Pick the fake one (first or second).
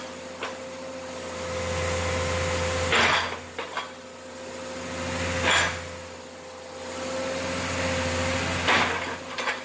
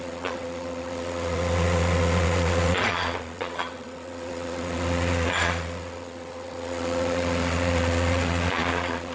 second